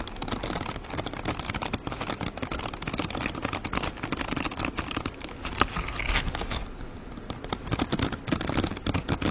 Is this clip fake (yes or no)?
no